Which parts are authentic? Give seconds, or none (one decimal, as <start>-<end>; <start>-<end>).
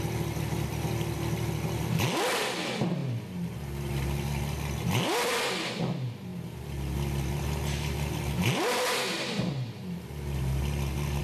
0.0-11.2